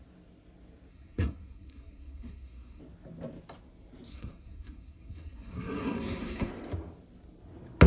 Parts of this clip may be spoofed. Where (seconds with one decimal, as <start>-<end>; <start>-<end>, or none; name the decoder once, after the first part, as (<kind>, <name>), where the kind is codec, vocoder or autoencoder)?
0.9-2.8 (codec, SNAC); 4.1-6.5